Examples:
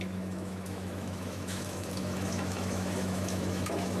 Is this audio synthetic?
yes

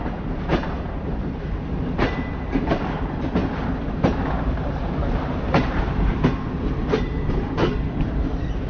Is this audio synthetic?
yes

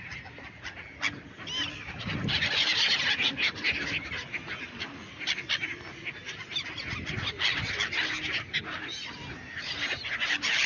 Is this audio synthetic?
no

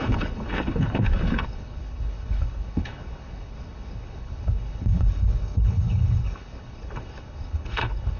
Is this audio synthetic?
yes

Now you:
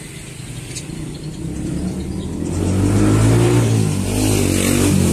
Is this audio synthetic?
no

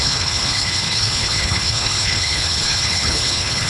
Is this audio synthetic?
yes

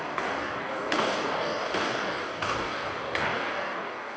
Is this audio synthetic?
yes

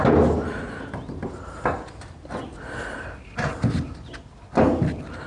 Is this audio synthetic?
no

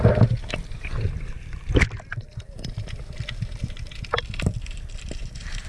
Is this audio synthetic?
no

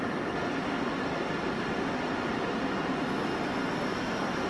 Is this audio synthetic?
no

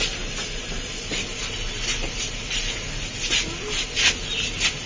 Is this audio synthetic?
no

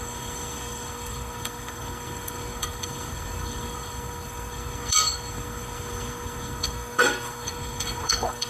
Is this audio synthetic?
yes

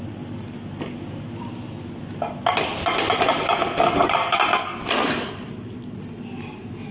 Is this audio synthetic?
no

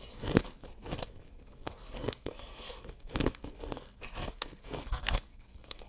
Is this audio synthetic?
yes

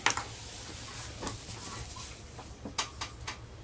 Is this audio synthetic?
no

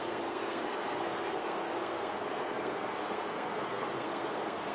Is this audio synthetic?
yes